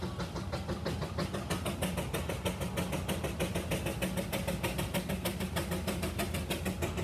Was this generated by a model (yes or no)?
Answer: no